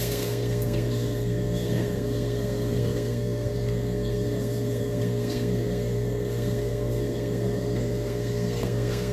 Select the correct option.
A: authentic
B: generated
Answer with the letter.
B